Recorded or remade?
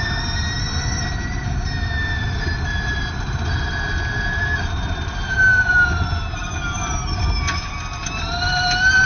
recorded